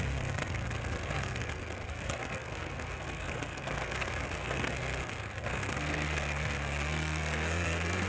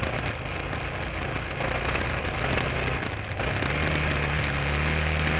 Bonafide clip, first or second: second